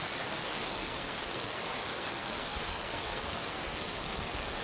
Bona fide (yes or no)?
no